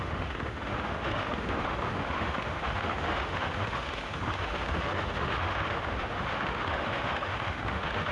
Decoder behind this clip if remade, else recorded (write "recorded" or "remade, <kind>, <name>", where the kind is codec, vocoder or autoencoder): remade, autoencoder, DAC-VAE